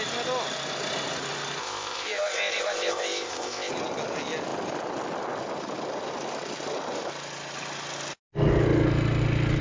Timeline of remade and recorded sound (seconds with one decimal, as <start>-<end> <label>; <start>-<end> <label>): 0.0-1.6 recorded; 1.6-3.7 remade; 3.7-9.6 recorded